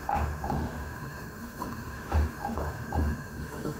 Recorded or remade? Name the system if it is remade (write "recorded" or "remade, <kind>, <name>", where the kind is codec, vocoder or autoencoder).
remade, autoencoder, DAC-VAE